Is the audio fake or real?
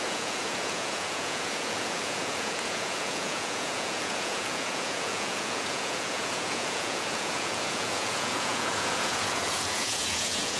fake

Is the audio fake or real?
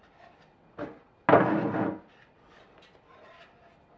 real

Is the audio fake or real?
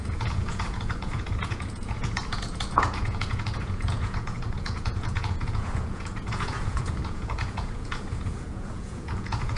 fake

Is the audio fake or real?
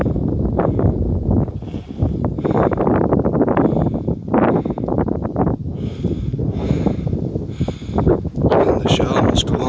real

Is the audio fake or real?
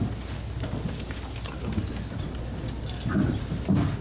real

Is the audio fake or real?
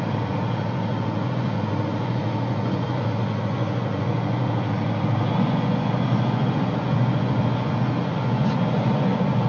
fake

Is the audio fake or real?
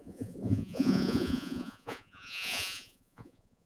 fake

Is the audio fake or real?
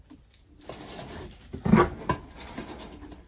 real